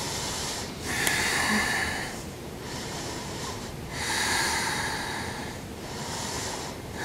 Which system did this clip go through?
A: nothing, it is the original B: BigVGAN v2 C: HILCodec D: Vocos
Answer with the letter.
B